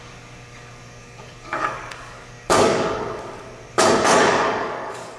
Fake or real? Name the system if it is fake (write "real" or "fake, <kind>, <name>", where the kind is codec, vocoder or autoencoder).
fake, codec, DAC